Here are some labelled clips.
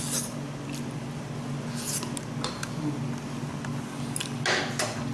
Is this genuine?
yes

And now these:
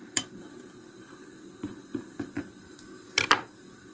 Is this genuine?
no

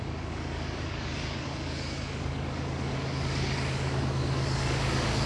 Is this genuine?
no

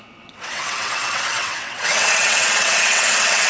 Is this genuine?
no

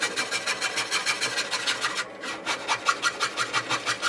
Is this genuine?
yes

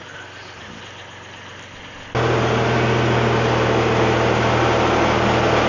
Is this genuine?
yes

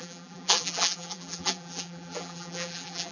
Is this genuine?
no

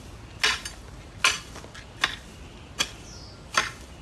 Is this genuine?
yes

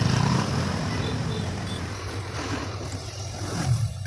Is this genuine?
no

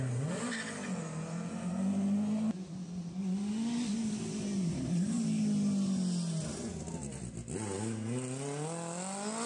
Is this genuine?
yes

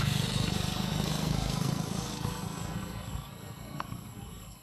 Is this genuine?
no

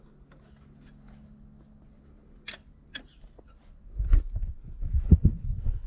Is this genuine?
yes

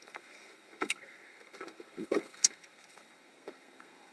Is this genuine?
no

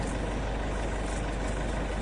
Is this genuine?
yes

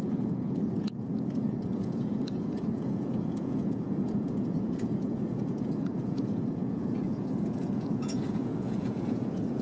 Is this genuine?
no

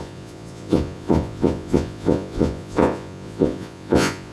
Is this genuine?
no